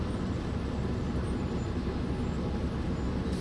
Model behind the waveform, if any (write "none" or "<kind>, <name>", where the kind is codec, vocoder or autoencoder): none